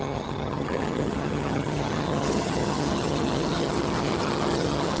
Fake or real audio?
fake